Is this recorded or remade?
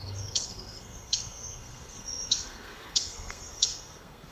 remade